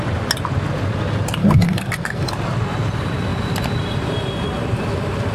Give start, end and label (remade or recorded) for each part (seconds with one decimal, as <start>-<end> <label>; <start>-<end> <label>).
0.0-1.4 recorded; 1.4-2.3 remade; 2.3-5.3 recorded